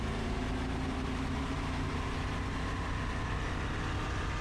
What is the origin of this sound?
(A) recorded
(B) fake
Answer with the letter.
B